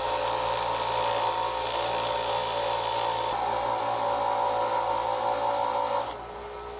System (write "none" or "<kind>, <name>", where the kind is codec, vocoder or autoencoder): none